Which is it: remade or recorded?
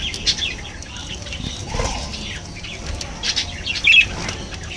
recorded